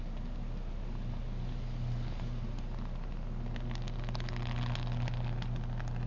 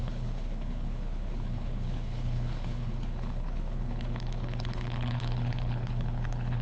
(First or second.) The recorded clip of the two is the first